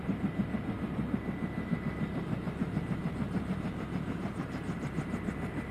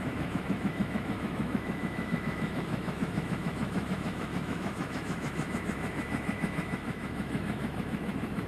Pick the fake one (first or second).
second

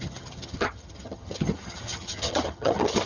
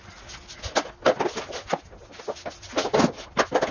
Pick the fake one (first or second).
first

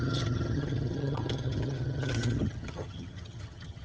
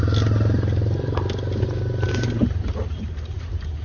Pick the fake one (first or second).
first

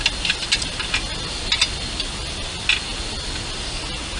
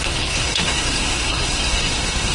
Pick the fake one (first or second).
second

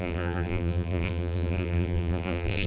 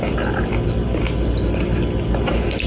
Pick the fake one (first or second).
first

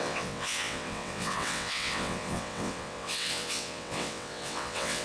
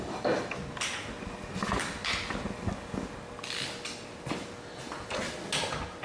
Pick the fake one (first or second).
first